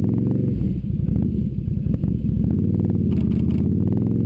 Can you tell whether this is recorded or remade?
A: recorded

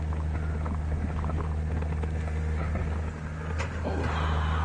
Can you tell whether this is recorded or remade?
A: recorded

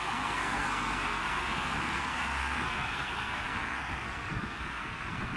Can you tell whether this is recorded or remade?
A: remade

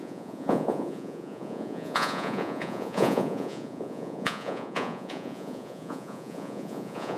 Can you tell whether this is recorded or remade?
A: remade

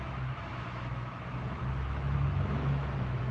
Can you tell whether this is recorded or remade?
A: remade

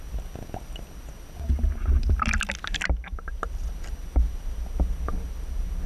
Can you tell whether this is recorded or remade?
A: recorded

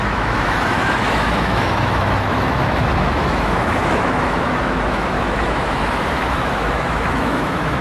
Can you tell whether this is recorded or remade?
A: remade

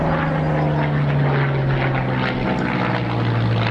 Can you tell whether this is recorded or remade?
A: recorded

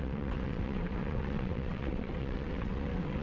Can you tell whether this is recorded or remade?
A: remade